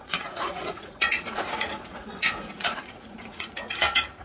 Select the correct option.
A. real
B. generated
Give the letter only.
B